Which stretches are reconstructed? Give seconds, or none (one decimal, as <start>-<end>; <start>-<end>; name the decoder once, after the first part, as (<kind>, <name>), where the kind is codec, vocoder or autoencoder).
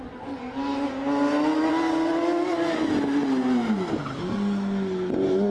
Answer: none